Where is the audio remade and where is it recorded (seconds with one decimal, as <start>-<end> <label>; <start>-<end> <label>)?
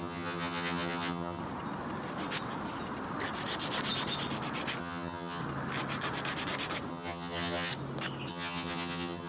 0.0-1.4 remade; 1.4-4.8 recorded; 4.8-5.4 remade; 5.4-6.9 recorded; 6.9-7.7 remade; 7.7-8.3 recorded; 8.3-9.3 remade